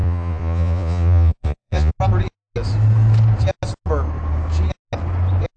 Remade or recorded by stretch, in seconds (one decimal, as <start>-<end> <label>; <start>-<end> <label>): 0.0-1.9 remade; 1.9-5.6 recorded